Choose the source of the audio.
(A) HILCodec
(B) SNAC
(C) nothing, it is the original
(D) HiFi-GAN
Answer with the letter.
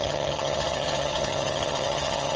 D